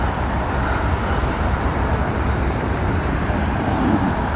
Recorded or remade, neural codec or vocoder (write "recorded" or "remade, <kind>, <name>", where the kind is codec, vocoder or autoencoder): remade, vocoder, BigVGAN v2